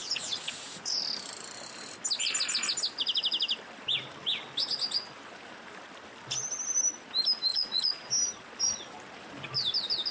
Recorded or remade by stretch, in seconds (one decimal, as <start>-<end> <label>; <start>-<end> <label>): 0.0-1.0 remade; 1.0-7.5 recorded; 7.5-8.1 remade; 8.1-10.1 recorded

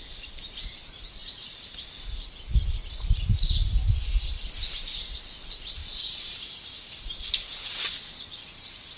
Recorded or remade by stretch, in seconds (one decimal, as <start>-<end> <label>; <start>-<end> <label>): 0.0-9.0 recorded

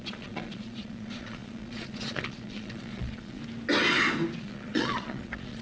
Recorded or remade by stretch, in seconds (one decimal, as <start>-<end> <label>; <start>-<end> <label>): 0.0-3.4 remade; 3.4-4.4 recorded; 4.4-5.6 remade

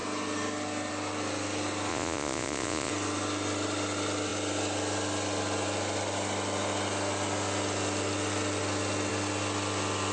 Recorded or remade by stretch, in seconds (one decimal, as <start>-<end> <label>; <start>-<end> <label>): 0.0-1.9 recorded; 1.9-2.9 remade; 2.9-10.1 recorded

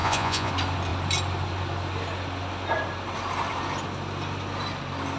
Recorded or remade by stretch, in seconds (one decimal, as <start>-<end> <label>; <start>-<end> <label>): 0.0-0.5 remade; 0.5-5.2 recorded